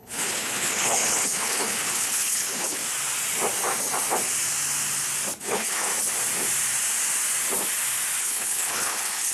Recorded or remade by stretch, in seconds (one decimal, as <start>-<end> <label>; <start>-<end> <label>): 0.0-2.8 remade; 2.8-5.4 recorded; 5.4-5.9 remade; 5.9-8.2 recorded; 8.2-9.3 remade